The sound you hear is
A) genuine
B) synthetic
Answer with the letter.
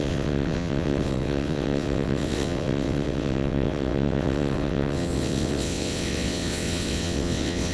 B